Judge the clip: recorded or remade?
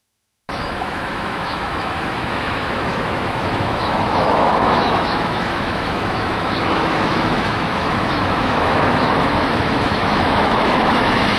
remade